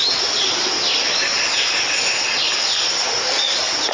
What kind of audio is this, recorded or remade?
recorded